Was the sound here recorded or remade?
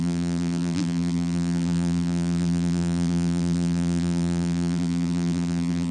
remade